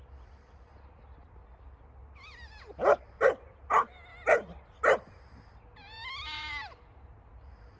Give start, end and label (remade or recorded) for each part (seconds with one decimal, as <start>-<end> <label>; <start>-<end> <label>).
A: 0.0-7.8 recorded